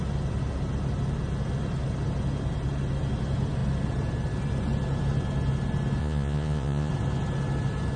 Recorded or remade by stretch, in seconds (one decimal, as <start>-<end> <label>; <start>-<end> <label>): 0.0-6.0 recorded; 6.0-6.9 remade; 6.9-8.0 recorded